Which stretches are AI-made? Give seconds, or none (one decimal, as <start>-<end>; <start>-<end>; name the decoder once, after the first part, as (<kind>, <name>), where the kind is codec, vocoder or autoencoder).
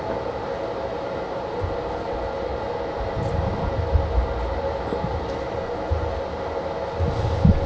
0.0-2.5 (vocoder, BigVGAN v2); 7.1-7.7